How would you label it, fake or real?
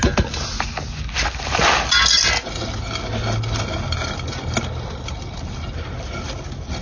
real